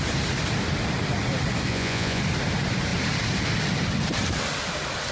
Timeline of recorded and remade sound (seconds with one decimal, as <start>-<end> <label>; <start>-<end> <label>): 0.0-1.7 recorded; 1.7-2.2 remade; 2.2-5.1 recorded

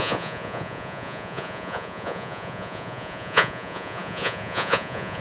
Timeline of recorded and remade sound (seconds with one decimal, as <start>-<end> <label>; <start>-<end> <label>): 0.0-5.2 remade

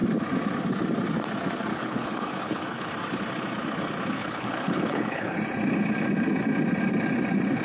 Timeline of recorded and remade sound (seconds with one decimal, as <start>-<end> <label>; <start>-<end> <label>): 0.0-1.7 recorded; 1.7-2.9 remade; 2.9-4.2 recorded; 4.2-5.4 remade; 5.4-7.6 recorded

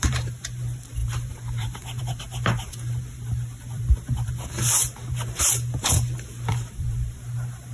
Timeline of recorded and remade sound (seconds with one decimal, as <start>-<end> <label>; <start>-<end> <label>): 0.0-7.7 remade

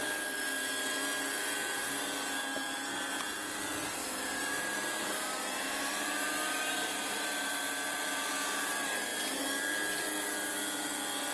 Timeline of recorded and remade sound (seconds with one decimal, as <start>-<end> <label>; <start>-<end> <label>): 0.0-4.0 recorded; 4.0-8.3 remade; 8.3-11.3 recorded

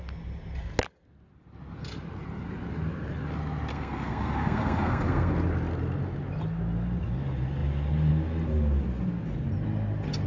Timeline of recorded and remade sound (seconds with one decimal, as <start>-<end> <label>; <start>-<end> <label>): 0.0-3.7 recorded; 3.7-5.3 remade; 5.3-10.3 recorded